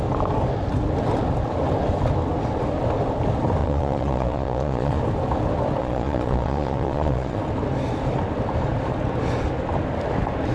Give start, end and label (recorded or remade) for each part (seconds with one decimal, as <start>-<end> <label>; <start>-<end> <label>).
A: 0.0-3.6 recorded; 3.6-5.0 remade; 5.0-5.8 recorded; 5.8-7.4 remade; 7.4-10.5 recorded